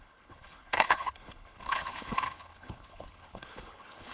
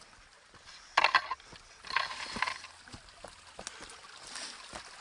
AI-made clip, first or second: first